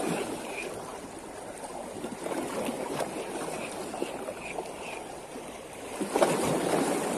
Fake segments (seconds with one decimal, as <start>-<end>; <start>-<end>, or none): none